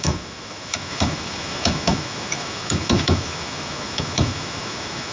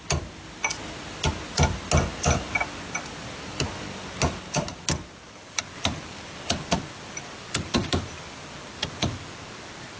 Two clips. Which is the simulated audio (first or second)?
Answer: first